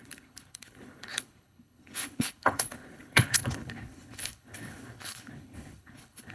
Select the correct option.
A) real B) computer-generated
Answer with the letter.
B